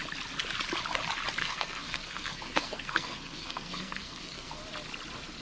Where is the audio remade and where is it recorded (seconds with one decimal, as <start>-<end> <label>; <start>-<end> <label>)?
0.0-1.4 recorded; 1.4-4.6 remade; 4.6-5.4 recorded